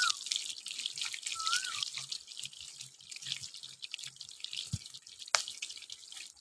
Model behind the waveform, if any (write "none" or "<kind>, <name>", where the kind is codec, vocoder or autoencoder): none